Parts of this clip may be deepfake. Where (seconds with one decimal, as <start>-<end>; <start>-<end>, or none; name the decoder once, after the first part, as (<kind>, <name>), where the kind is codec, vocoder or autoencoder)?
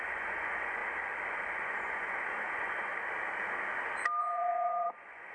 0.0-0.8 (vocoder, Vocos); 1.3-2.9; 4.2-5.3